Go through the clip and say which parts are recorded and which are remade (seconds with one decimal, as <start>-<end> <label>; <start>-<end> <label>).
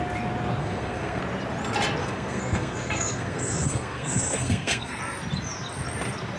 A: 0.0-0.6 recorded; 0.6-1.2 remade; 1.2-2.0 recorded; 2.0-5.0 remade; 5.0-6.4 recorded